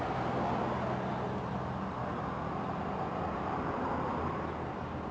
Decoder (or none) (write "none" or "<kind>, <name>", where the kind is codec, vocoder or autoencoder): none